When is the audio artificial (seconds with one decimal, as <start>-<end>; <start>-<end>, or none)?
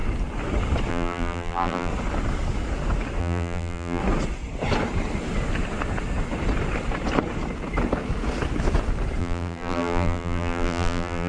0.9-1.9; 3.2-4.0; 9.2-11.3